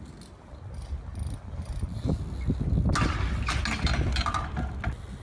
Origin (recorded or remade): recorded